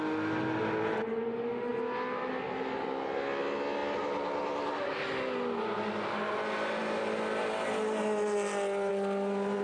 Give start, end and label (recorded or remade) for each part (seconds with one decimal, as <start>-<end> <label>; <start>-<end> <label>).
0.0-9.6 recorded